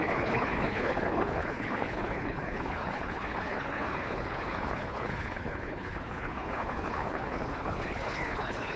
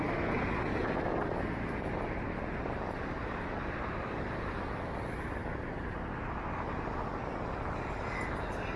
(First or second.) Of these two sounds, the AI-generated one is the first